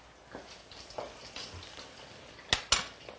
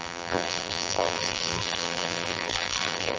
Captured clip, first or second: first